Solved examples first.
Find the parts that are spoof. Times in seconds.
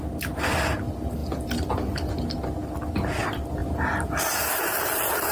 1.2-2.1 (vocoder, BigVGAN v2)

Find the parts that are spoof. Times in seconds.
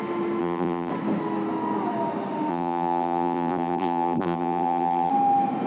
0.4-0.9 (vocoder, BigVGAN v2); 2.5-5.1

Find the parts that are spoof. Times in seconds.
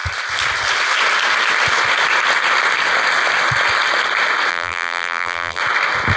4.5-5.6 (vocoder, BigVGAN v2)